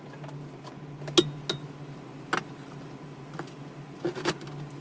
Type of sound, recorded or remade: recorded